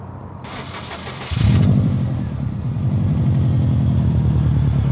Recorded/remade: remade